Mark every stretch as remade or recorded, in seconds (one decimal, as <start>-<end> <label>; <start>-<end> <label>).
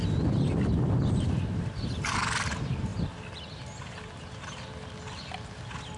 0.0-6.0 recorded